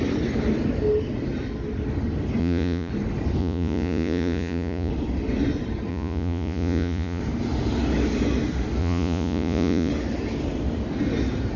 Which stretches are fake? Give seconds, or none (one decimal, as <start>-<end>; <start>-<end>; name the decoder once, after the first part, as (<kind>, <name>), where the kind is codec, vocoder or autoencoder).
2.4-2.9 (vocoder, Vocos); 3.4-4.9; 5.9-7.2; 8.8-9.9